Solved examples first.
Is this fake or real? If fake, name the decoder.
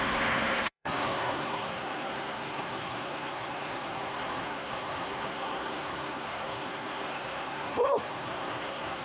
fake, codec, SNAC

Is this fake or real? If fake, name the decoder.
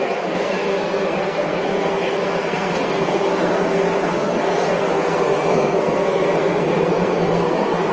fake, codec, SNAC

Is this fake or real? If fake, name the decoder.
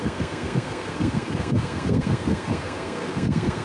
fake, codec, SNAC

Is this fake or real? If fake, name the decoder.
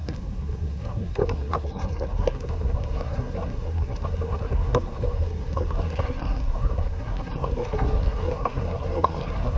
fake, codec, SNAC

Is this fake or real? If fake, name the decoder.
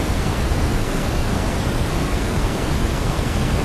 fake, codec, SNAC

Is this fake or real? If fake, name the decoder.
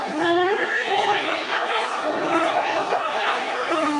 fake, codec, SNAC